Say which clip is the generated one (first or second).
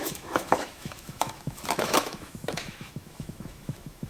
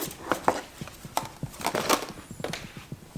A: first